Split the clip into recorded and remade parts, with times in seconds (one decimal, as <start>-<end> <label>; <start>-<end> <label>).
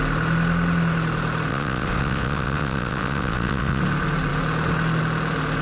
0.0-1.5 recorded; 1.5-3.8 remade; 3.8-5.6 recorded